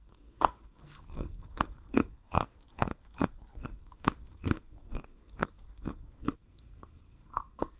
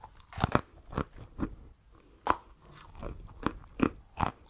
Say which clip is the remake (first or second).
first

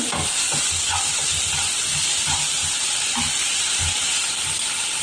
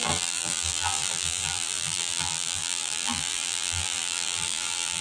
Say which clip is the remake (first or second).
second